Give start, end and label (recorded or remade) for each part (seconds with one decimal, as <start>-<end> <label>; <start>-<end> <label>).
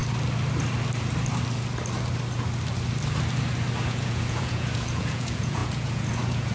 0.0-3.9 recorded; 3.9-6.5 remade